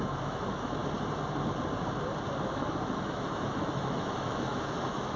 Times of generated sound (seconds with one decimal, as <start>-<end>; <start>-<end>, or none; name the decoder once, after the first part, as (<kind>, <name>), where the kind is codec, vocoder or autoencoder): 0.0-0.8 (autoencoder, DAC-VAE); 2.4-5.2